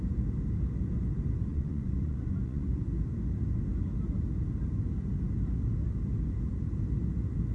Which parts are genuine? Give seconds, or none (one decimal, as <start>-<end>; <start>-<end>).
0.0-1.5; 2.7-7.5